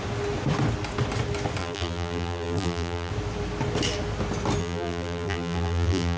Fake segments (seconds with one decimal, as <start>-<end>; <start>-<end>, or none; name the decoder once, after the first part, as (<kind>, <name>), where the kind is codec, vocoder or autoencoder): 1.6-3.1 (vocoder, BigVGAN v2); 4.6-6.2

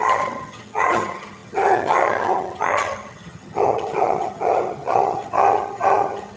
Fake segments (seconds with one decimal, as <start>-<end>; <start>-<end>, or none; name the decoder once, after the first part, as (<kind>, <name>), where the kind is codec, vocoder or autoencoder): 0.0-6.4 (vocoder, HiFi-GAN)

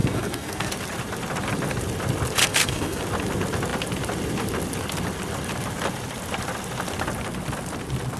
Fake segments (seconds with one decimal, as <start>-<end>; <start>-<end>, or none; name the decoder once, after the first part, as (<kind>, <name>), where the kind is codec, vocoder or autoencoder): 0.0-0.7 (codec, SNAC); 2.4-3.0

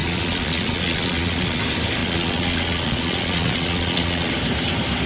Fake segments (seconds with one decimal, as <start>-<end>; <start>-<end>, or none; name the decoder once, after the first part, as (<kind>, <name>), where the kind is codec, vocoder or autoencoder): 0.0-1.6 (vocoder, Vocos); 2.0-4.3

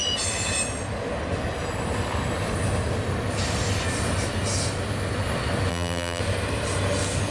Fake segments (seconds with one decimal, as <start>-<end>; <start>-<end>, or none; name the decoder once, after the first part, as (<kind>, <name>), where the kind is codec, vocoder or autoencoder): 5.7-6.2 (vocoder, BigVGAN v2)

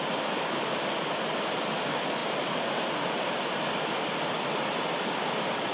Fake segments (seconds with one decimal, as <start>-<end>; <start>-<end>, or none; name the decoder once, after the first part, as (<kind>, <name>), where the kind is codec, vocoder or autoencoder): none

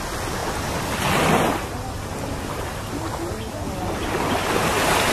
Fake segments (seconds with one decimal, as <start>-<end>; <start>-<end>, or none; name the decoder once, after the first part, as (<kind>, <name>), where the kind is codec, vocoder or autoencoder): none

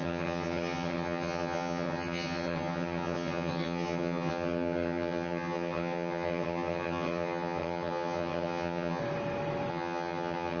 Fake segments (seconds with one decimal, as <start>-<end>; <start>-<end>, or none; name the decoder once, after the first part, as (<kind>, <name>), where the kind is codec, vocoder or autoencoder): 0.0-9.0 (vocoder, HiFi-GAN); 9.7-10.6